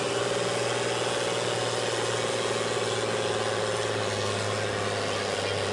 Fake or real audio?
real